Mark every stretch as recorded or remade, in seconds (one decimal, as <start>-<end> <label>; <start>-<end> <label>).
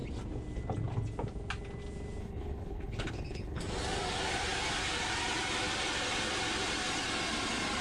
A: 0.0-2.2 recorded; 2.2-3.6 remade; 3.6-7.8 recorded